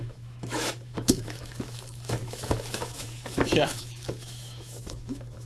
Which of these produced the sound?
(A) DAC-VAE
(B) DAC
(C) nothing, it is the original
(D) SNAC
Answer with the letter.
A